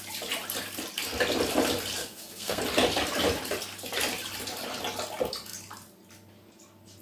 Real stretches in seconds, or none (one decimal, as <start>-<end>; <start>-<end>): 0.0-2.0; 2.6-7.0